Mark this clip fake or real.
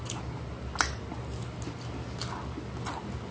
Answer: real